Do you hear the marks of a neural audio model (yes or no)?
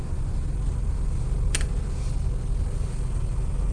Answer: no